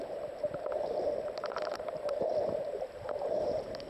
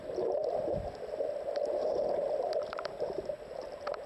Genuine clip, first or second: second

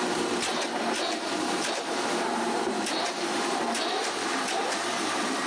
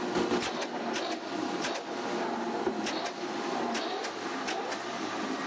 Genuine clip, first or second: second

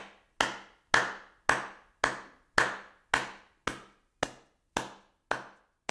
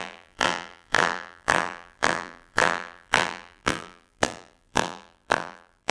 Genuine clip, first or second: first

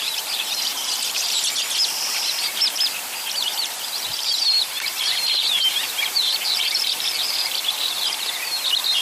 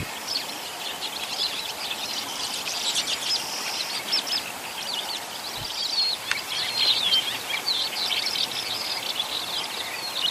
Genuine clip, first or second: second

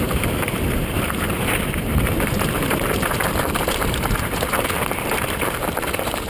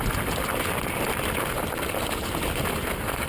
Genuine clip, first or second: second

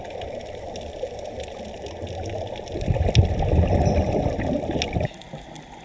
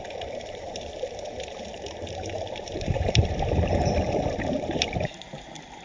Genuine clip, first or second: first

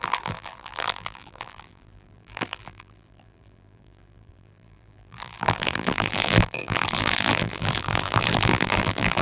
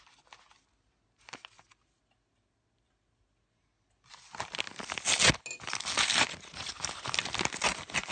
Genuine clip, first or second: second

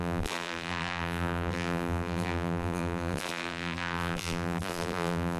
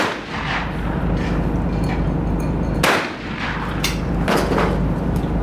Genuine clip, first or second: second